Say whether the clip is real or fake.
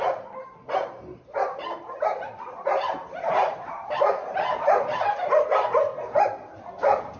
real